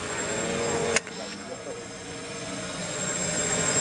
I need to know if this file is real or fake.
fake